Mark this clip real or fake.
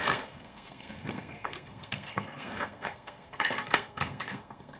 fake